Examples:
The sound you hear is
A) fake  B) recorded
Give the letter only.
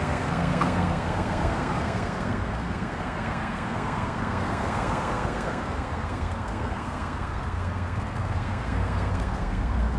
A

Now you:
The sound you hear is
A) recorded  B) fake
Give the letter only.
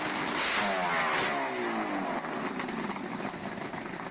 A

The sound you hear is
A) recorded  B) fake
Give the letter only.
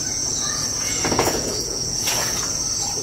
B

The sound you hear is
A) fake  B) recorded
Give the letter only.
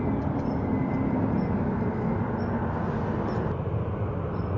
B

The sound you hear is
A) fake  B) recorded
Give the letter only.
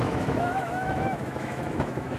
A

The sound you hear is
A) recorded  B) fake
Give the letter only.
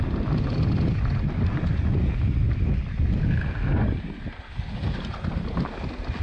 A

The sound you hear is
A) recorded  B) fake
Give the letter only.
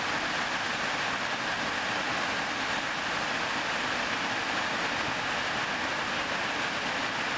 A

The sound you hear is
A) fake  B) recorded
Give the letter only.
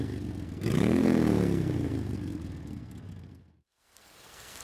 A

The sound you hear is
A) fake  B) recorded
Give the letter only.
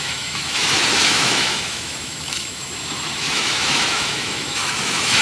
A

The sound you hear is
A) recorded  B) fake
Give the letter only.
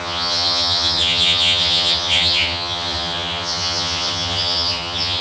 B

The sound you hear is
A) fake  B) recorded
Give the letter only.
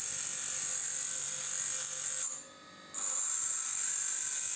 B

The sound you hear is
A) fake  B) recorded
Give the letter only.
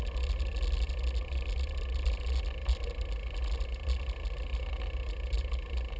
B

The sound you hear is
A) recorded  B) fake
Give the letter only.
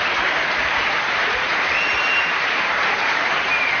B